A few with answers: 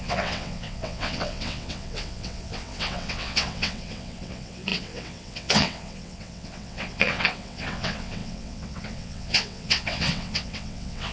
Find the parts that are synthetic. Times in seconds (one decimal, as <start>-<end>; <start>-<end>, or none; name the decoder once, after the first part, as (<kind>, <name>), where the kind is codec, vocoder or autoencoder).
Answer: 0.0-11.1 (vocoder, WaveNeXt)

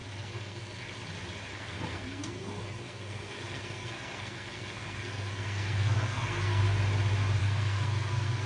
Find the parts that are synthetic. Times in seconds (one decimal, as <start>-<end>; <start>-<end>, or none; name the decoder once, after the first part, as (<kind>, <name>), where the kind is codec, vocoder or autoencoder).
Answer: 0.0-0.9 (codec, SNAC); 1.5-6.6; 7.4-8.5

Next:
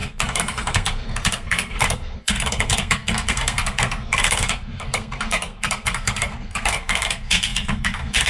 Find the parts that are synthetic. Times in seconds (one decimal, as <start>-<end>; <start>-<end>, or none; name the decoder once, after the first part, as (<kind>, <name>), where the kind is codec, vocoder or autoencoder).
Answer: 0.0-8.3 (codec, SNAC)